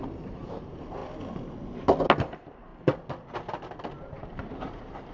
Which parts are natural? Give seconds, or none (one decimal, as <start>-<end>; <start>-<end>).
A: 1.0-2.2; 2.7-4.0